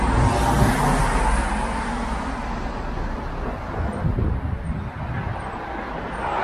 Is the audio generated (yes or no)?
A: no